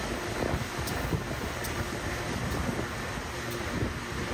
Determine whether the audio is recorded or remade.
recorded